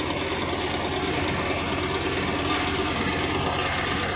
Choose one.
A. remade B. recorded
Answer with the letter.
B